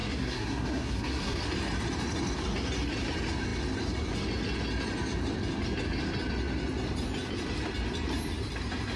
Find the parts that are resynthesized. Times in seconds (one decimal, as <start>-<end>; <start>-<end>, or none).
0.0-1.4